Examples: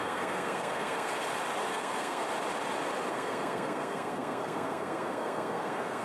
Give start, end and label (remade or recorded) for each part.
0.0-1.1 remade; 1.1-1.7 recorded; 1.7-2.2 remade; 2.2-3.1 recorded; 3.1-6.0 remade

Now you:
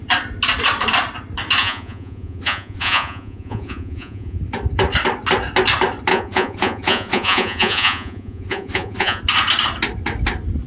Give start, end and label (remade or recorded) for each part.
0.0-1.6 recorded; 1.6-4.4 remade; 4.4-6.1 recorded; 6.1-9.2 remade; 9.2-10.7 recorded

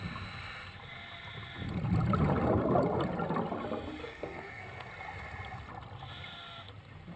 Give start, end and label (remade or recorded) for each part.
0.0-4.0 recorded; 4.0-4.9 remade; 4.9-7.2 recorded

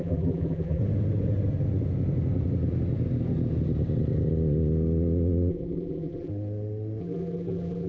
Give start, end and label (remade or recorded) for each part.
0.0-0.8 remade; 0.8-5.5 recorded; 5.5-6.3 remade; 6.3-7.0 recorded; 7.0-7.9 remade

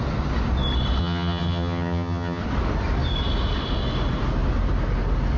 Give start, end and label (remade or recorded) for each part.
0.0-1.0 recorded; 1.0-2.4 remade; 2.4-5.4 recorded

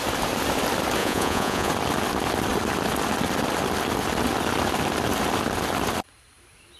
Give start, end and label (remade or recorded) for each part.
0.0-1.0 recorded; 1.0-1.7 remade; 1.7-6.8 recorded